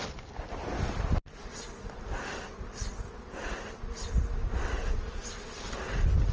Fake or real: real